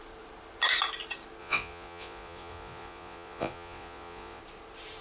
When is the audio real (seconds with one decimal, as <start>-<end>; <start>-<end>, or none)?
0.0-1.4; 4.4-5.0